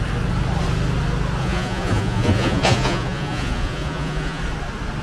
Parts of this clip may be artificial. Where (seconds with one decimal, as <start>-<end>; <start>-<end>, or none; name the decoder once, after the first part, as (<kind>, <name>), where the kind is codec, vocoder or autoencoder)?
1.4-4.4 (vocoder, Vocos)